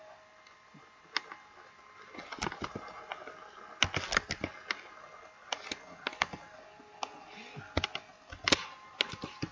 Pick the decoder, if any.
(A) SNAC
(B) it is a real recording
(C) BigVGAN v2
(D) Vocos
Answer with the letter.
B